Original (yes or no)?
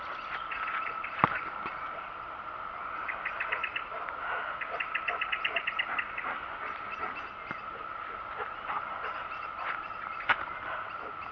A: yes